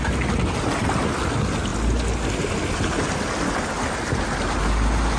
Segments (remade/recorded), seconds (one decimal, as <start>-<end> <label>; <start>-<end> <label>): 0.0-5.2 recorded